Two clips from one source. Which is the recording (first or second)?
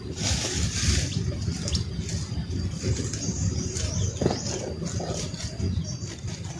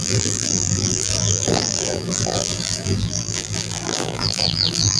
first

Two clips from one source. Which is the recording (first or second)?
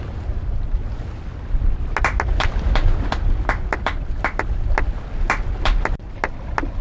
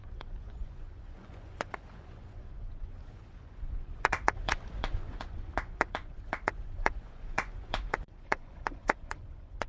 first